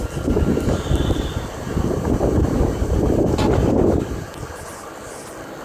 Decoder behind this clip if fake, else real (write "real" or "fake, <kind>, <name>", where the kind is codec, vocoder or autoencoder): real